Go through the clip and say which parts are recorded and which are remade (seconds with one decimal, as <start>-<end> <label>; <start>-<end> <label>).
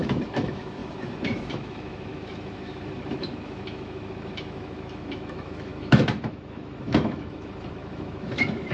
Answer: 0.0-8.7 remade